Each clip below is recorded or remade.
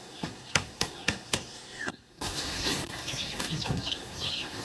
remade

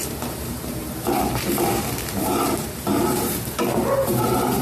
remade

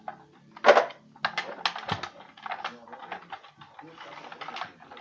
recorded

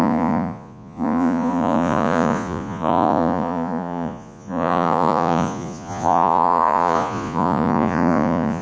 remade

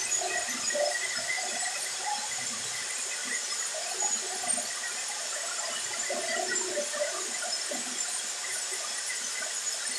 recorded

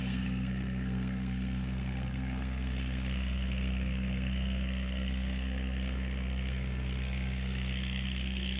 remade